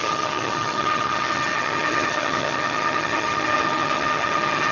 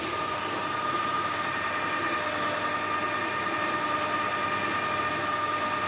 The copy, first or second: first